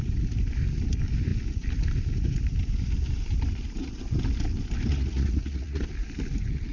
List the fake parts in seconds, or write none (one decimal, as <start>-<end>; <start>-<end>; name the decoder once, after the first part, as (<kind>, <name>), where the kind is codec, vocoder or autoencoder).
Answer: 4.9-5.8 (vocoder, Vocos)